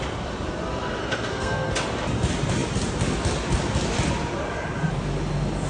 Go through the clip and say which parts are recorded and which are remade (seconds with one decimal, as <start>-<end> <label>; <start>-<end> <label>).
0.0-1.0 recorded; 1.0-1.7 remade; 1.7-5.7 recorded